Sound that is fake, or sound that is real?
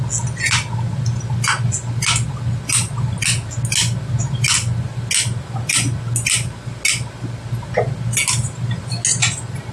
real